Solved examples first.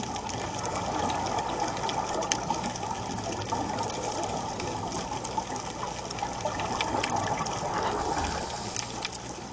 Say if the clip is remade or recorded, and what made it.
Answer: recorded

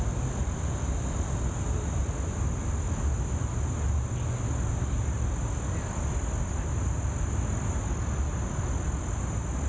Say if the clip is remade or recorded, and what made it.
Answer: recorded